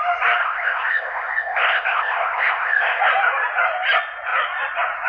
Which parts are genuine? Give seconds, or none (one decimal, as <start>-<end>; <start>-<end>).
0.0-0.4; 3.0-5.1